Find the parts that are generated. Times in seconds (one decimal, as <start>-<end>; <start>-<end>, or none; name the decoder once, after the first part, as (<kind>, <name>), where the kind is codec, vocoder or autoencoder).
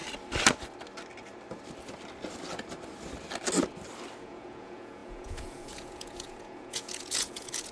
4.2-7.7 (vocoder, Vocos)